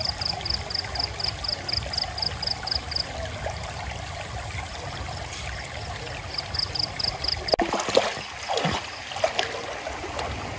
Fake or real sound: real